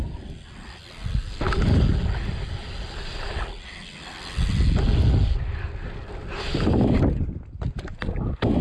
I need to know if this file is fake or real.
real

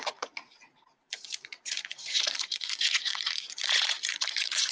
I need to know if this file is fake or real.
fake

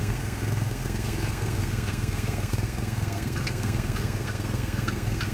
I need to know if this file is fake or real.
fake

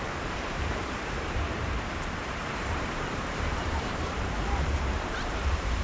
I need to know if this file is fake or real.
fake